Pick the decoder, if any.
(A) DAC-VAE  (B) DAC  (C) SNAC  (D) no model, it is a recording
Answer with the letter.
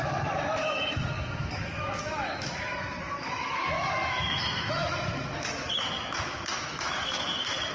A